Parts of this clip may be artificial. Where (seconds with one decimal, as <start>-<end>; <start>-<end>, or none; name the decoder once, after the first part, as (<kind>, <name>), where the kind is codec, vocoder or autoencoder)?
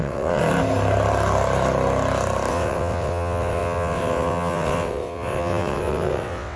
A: 0.0-0.4 (vocoder, WaveNeXt); 2.5-6.6